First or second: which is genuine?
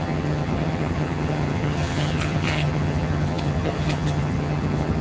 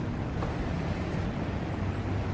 second